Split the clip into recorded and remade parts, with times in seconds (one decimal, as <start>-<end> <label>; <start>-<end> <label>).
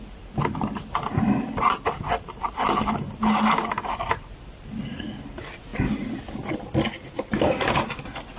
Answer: 0.0-8.4 recorded